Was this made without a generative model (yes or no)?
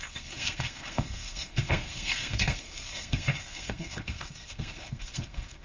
no